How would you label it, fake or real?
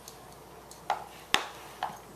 real